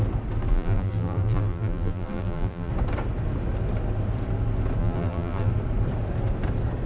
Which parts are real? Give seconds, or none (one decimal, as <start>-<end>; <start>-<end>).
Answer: 0.0-0.5; 2.7-4.8; 5.5-6.9